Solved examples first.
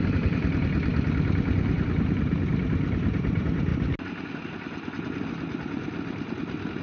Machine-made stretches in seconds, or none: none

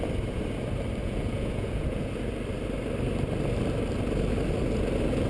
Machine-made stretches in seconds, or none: 1.0-2.1 (vocoder, Vocos)

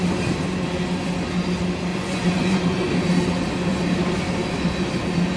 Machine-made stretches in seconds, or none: 1.9-2.9 (vocoder, Vocos)

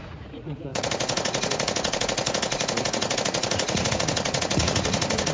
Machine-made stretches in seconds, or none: 0.0-5.3 (vocoder, Vocos)

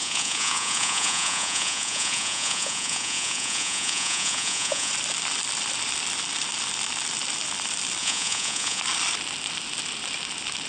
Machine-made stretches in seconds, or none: 0.0-4.9 (vocoder, Vocos); 8.0-8.8

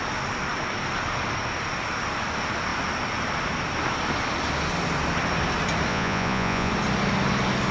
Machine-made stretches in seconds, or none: 5.9-6.7 (vocoder, Vocos)

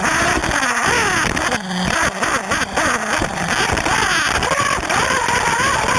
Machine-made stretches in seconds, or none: none

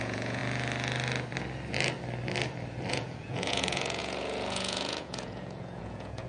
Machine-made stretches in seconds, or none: 0.0-0.4 (vocoder, Vocos); 2.9-6.3